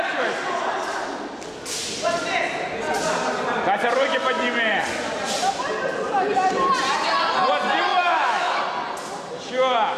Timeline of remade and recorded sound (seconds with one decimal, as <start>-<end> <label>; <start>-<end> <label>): 0.0-7.9 recorded; 7.9-8.6 remade; 8.6-10.0 recorded